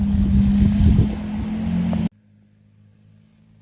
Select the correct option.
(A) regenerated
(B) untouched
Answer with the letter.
B